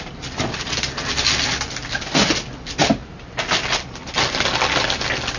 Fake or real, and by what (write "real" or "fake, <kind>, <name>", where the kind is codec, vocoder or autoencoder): real